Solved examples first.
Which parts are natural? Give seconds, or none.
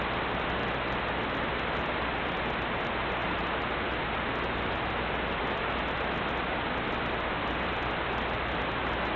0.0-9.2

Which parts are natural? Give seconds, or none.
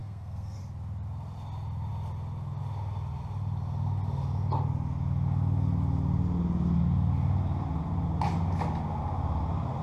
0.6-9.8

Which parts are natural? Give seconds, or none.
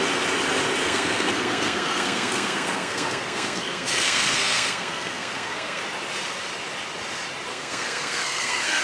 0.0-0.8; 5.8-7.5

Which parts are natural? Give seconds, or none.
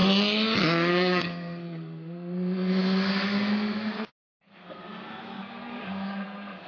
0.0-0.9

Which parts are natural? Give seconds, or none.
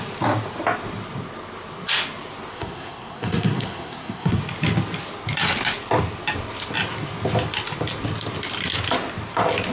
0.0-2.5; 4.4-9.7